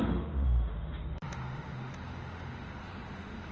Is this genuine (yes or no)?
no